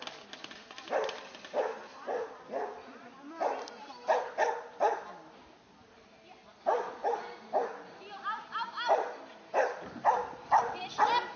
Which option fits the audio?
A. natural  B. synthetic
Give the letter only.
A